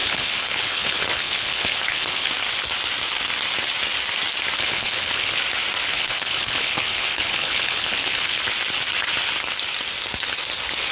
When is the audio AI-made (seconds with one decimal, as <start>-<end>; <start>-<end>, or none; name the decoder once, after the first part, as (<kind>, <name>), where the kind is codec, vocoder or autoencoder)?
0.0-2.3 (codec, HILCodec); 4.6-5.4; 5.9-8.4